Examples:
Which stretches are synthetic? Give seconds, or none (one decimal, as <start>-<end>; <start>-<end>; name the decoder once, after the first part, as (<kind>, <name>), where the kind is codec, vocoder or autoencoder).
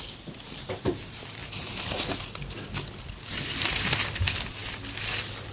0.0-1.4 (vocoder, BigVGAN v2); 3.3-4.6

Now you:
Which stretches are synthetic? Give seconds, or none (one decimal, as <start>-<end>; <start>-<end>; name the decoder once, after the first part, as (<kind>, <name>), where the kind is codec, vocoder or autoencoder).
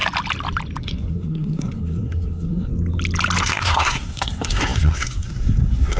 0.8-2.7 (codec, SNAC); 3.4-6.0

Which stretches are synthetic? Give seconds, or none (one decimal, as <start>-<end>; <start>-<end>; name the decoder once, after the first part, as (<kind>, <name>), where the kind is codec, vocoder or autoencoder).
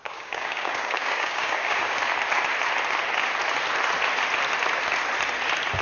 0.0-2.0 (codec, DAC)